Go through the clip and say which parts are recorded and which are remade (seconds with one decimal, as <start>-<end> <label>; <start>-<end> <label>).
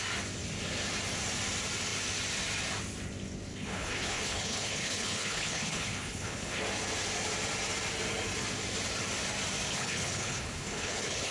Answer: 0.0-3.5 recorded; 3.5-6.6 remade; 6.6-9.7 recorded; 9.7-11.3 remade